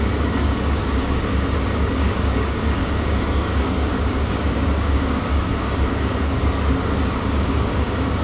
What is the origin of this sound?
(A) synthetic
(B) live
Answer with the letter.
A